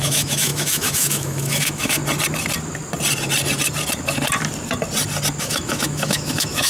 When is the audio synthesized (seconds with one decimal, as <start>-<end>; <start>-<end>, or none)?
0.0-2.0; 5.4-6.7